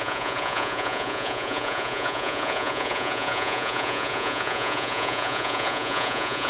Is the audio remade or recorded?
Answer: remade